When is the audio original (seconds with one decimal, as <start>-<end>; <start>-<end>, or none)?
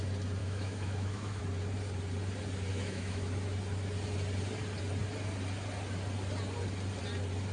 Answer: 0.0-0.4; 1.4-2.7; 3.3-7.5